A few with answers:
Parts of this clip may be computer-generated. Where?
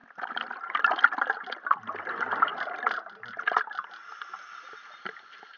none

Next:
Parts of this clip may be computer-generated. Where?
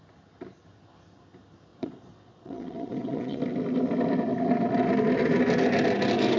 1.7-3.4 (vocoder, Vocos)